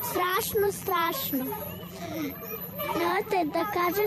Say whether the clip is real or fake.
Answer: fake